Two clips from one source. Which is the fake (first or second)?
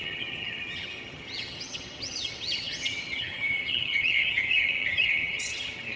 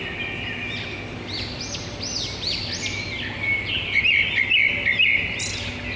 first